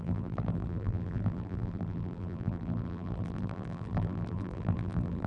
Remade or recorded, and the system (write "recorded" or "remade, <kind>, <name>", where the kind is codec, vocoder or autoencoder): remade, vocoder, BigVGAN v2